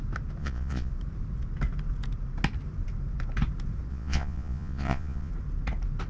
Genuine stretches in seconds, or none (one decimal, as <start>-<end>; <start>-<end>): 0.0-0.4; 0.9-3.9; 5.3-6.1